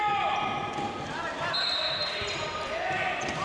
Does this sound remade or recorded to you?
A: recorded